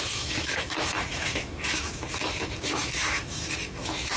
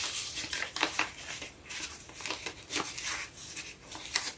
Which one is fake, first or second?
first